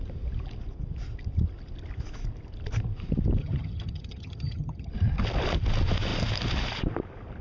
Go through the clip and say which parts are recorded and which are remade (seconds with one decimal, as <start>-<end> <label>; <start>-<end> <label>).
0.0-3.4 recorded; 3.4-4.9 remade; 4.9-7.4 recorded